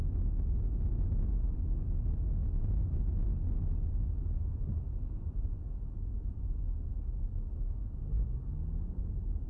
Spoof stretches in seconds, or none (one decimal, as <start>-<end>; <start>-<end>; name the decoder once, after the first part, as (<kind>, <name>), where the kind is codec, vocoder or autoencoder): none